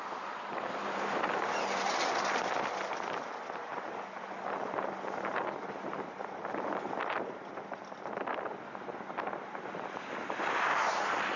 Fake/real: real